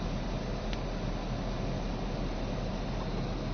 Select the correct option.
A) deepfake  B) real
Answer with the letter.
B